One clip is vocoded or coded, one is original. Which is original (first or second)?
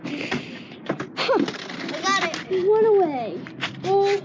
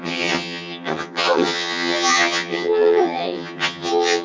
first